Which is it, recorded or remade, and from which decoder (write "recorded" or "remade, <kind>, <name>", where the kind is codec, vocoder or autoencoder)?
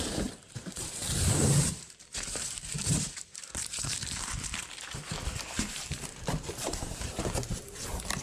remade, vocoder, BigVGAN v2